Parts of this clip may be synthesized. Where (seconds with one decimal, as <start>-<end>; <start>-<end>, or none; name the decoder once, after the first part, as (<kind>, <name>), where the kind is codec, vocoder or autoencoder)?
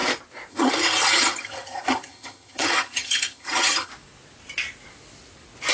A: 0.5-3.9 (vocoder, HiFi-GAN)